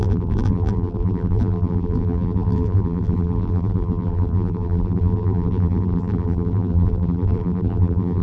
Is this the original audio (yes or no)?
no